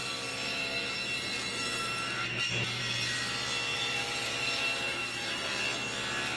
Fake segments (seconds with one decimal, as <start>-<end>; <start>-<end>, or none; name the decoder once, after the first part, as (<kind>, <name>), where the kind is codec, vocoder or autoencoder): 0.0-2.8 (vocoder, BigVGAN v2); 3.7-5.6